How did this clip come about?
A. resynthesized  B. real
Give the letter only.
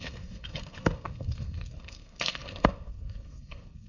A